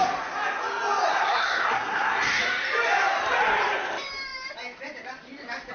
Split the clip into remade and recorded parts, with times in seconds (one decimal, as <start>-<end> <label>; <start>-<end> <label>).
0.0-1.1 recorded; 1.1-2.4 remade; 2.4-5.7 recorded